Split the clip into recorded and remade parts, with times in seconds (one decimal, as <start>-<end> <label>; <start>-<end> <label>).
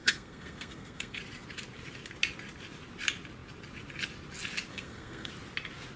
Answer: 0.0-1.2 remade; 1.2-4.7 recorded; 4.7-5.3 remade; 5.3-6.0 recorded